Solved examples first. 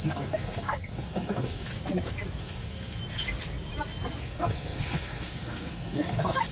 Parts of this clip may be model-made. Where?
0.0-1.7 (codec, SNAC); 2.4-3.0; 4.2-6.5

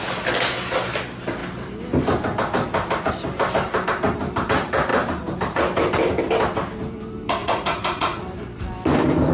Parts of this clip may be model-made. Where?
7.4-8.2 (vocoder, Vocos)

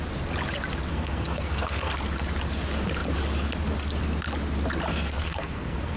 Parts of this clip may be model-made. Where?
0.9-1.9 (codec, SNAC); 4.9-6.0

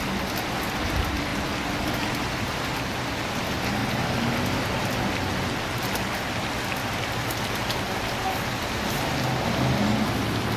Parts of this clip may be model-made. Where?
6.8-8.5 (vocoder, BigVGAN v2)